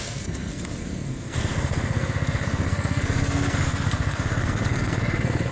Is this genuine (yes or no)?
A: no